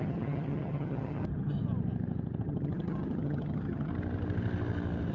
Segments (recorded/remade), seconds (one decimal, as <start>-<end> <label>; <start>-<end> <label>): 0.0-1.6 remade; 1.6-2.4 recorded; 2.4-3.9 remade; 3.9-5.1 recorded